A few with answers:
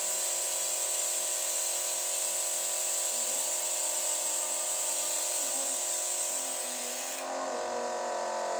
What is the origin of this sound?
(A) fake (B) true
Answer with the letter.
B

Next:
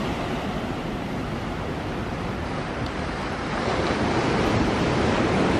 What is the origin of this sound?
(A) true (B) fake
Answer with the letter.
B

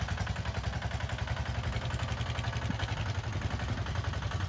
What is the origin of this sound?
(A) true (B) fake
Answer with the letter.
A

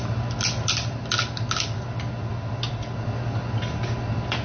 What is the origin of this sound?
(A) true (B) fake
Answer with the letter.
A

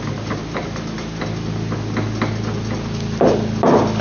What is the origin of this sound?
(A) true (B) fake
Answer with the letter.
A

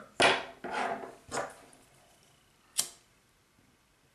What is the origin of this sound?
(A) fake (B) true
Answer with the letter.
B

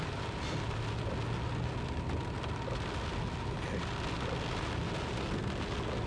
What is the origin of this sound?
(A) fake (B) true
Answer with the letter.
B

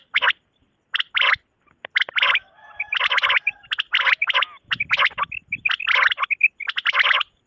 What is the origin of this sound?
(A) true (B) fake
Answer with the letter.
A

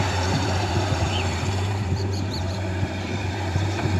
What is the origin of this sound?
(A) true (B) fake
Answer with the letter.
B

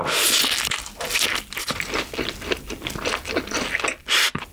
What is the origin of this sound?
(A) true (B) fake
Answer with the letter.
A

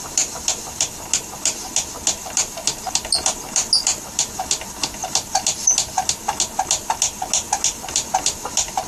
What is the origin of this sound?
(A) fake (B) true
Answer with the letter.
B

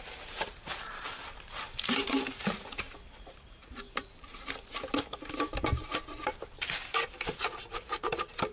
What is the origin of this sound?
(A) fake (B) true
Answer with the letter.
A